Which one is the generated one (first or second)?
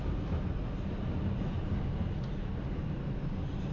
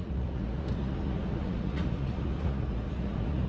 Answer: second